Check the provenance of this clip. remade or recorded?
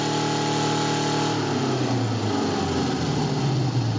recorded